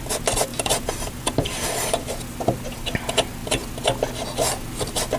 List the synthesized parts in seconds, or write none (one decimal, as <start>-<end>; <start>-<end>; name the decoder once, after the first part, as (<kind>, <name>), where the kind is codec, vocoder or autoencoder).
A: 0.5-2.1 (vocoder, BigVGAN v2)